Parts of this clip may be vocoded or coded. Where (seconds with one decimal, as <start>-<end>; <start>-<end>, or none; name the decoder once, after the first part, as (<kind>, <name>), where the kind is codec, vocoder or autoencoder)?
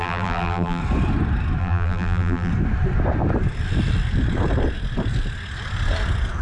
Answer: 0.0-0.8 (vocoder, BigVGAN v2); 1.6-2.5